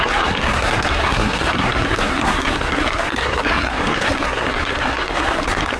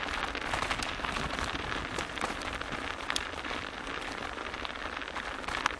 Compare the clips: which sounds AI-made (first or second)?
first